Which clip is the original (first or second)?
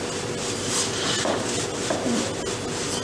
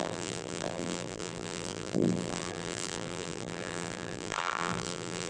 first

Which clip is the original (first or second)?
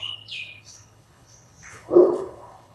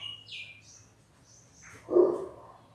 second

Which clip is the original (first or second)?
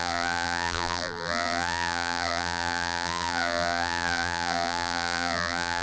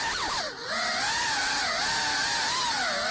second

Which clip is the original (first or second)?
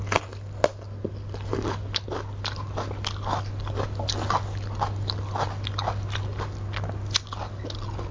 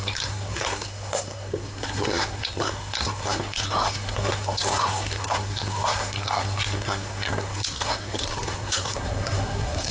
first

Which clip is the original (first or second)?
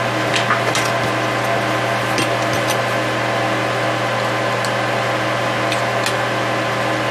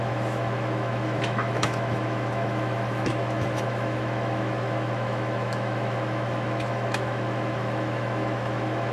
first